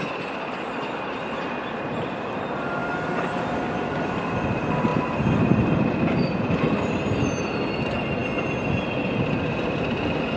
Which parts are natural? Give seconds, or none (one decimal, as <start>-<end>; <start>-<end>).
0.0-10.4